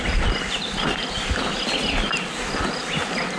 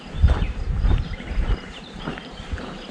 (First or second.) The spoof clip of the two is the second